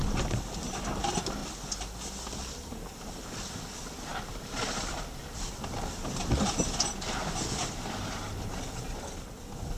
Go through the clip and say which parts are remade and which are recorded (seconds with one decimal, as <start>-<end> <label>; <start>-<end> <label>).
0.0-9.8 recorded